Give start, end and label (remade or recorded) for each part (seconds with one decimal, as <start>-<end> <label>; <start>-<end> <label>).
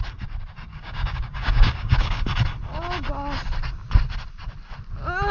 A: 0.0-0.7 recorded; 0.7-2.2 remade; 2.2-5.3 recorded